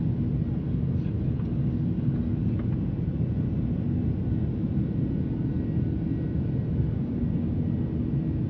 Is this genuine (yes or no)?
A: yes